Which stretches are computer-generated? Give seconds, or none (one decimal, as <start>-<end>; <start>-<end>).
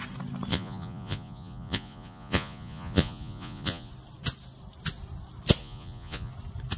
0.5-3.9; 5.6-6.3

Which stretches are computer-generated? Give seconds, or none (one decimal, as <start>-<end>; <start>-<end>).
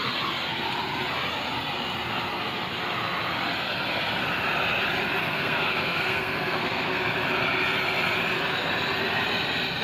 5.2-7.0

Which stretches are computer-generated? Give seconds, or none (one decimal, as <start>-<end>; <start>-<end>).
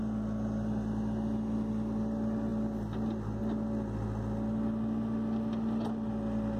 none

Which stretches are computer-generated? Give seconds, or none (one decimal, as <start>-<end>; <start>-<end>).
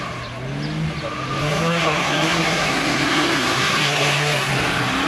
1.4-4.5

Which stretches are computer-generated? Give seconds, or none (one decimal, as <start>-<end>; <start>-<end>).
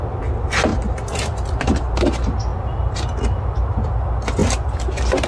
none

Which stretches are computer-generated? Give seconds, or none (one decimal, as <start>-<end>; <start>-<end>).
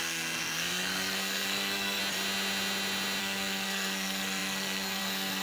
0.0-2.0; 3.2-5.4